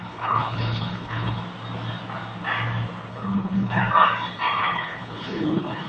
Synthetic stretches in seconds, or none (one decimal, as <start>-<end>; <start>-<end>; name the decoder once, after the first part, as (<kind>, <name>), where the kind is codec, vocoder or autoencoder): 0.0-1.4 (codec, HILCodec); 3.1-3.8; 4.6-5.9